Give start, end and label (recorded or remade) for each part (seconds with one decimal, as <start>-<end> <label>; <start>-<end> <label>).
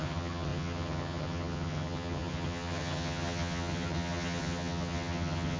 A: 0.0-5.6 remade